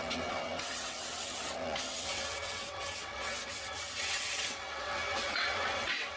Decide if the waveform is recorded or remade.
remade